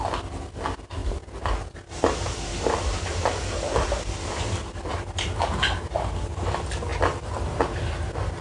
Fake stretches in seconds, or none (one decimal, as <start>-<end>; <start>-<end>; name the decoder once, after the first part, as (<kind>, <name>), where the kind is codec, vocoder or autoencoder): 2.5-3.2 (vocoder, BigVGAN v2)